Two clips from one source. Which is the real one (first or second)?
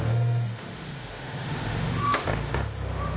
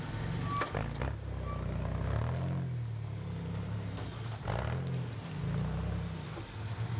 second